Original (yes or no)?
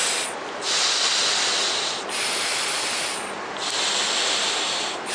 yes